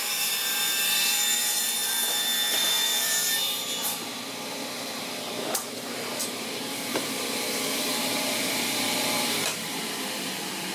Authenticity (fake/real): fake